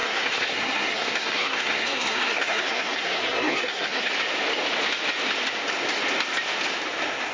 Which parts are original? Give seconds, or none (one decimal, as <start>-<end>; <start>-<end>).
4.1-7.3